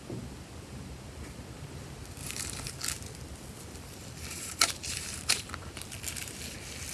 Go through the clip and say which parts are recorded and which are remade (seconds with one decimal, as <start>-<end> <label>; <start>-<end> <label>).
0.0-2.2 recorded; 2.2-2.7 remade; 2.7-4.3 recorded; 4.3-5.5 remade; 5.5-6.9 recorded